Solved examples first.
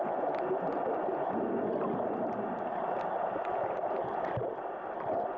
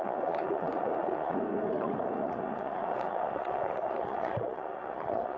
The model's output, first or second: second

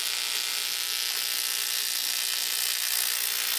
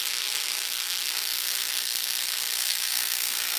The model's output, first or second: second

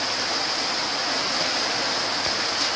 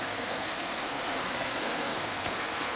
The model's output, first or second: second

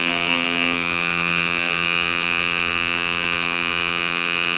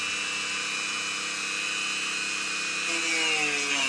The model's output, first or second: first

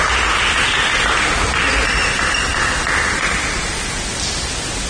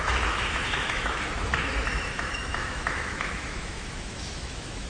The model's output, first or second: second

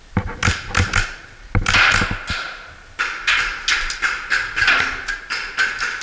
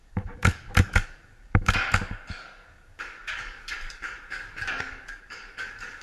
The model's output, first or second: second